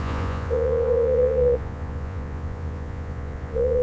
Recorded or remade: remade